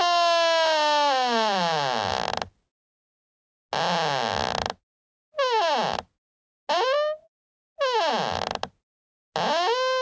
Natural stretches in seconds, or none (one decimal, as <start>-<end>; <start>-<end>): 0.0-10.0